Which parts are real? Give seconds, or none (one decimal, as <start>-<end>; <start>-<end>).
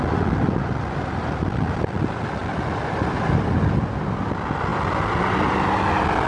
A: 0.0-6.3